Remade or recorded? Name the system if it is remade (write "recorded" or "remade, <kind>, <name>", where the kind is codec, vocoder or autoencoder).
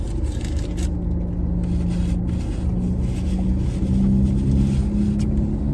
recorded